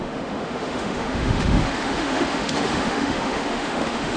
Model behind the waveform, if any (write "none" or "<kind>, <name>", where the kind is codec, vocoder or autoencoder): autoencoder, DAC-VAE